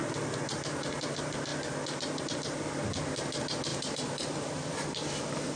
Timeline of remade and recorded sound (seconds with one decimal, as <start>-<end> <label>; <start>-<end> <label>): 0.0-3.7 recorded; 3.7-4.7 remade; 4.7-5.6 recorded